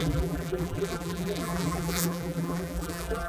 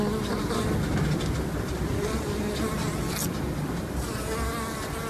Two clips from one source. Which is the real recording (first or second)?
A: second